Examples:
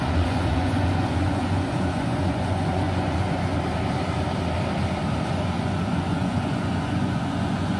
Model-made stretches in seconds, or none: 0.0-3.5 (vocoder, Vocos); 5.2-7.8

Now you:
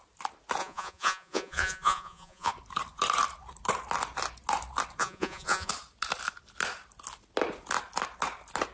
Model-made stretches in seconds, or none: 0.6-2.5 (vocoder, Vocos); 5.0-5.7

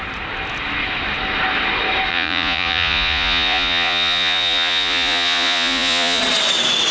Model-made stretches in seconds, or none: 2.1-6.2 (vocoder, Vocos)